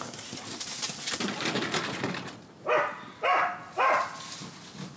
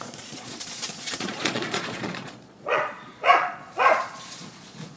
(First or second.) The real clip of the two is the first